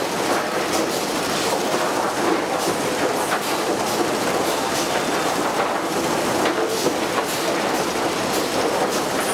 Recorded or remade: remade